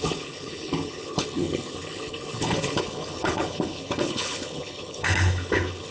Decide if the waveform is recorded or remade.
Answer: remade